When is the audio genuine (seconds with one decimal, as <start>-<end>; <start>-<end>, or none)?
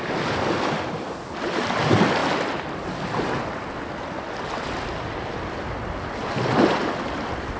0.0-7.6